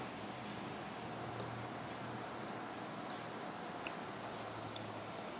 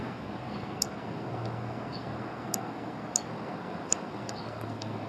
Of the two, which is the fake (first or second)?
second